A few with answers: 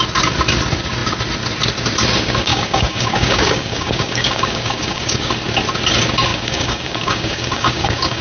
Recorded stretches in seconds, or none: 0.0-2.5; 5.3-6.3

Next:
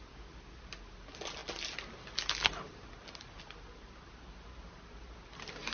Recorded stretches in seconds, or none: 0.0-5.7